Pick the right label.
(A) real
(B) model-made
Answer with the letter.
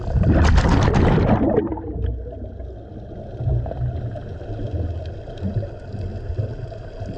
A